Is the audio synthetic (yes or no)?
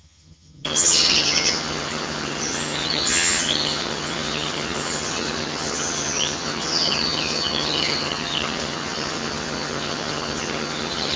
yes